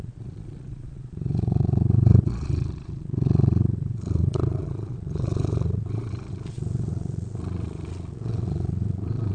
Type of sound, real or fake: fake